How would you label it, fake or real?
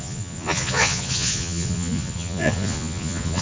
fake